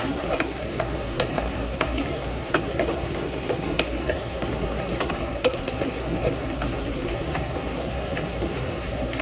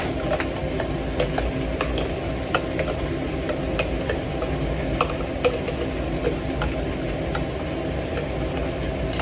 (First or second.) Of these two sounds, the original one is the second